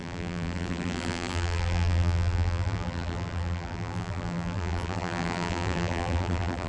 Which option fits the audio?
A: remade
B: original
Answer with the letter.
A